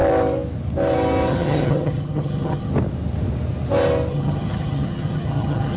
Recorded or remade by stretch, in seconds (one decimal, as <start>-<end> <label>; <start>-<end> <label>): 0.0-1.3 recorded; 1.3-2.7 remade; 2.7-4.1 recorded; 4.1-5.8 remade